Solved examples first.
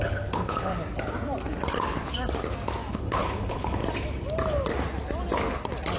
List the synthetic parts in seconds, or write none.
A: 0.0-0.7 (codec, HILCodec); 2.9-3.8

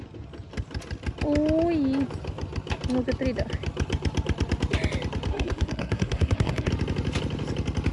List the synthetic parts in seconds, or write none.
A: 5.3-6.7 (codec, SNAC)

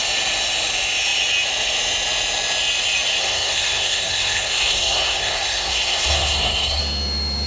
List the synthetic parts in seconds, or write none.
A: 3.2-6.8 (codec, SNAC)